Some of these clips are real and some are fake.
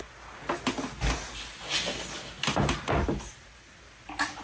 real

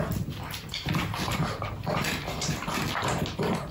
real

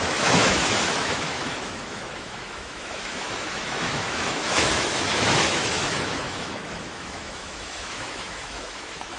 fake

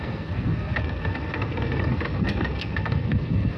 fake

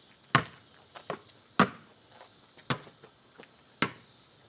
real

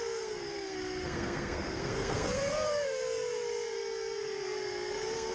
fake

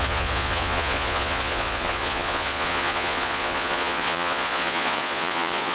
fake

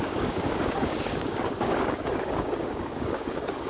fake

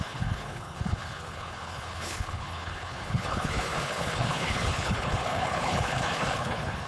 fake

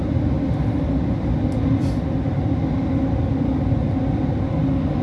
real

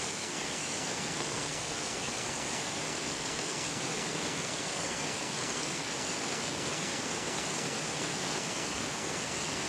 fake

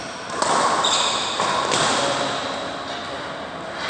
real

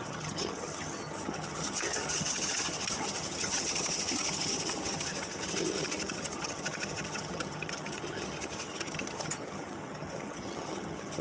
fake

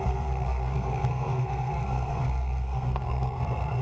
fake